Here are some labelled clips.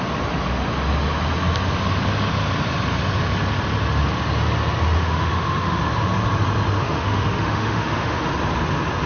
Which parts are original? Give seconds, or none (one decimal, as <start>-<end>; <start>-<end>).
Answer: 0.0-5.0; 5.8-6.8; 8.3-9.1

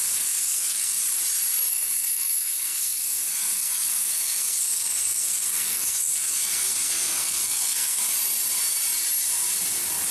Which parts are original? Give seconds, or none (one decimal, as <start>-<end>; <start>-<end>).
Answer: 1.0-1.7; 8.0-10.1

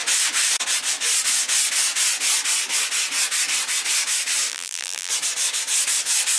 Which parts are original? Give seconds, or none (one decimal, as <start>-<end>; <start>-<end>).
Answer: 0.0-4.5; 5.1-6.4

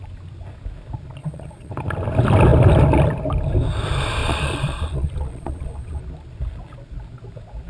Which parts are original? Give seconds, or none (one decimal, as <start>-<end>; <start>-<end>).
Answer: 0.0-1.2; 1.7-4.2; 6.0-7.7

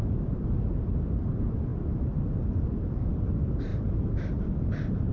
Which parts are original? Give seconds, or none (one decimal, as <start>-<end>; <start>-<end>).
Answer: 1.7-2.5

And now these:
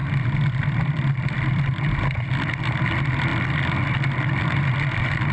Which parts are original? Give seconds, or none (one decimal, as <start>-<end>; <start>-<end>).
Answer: 0.0-5.3